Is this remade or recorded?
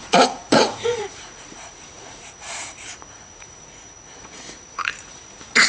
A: remade